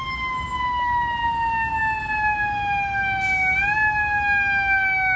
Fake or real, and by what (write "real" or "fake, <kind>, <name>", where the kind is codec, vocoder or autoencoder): real